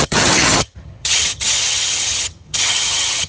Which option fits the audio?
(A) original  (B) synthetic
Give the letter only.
B